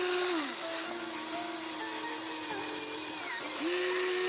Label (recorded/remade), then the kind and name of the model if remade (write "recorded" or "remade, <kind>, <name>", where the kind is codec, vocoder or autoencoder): recorded